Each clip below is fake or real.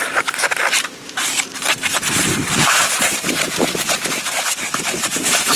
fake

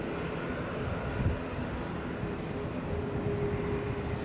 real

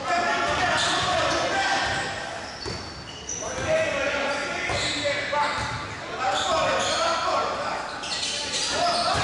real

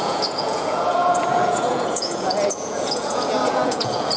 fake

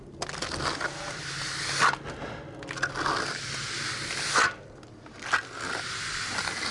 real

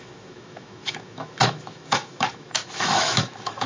fake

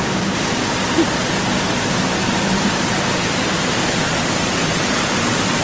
fake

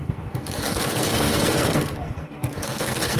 fake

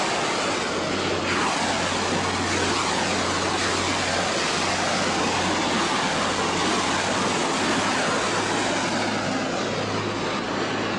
real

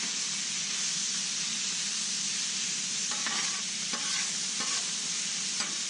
real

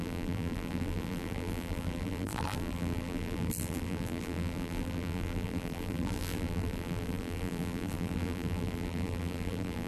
fake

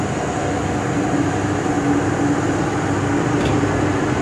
real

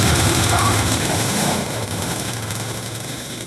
fake